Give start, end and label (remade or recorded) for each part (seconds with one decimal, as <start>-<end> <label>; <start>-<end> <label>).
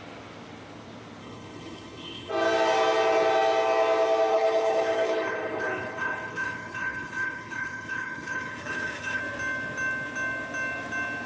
0.0-1.2 recorded; 1.2-2.3 remade; 2.3-4.3 recorded; 4.3-9.2 remade; 9.2-11.3 recorded